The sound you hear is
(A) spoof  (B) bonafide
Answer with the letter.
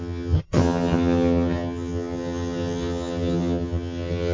A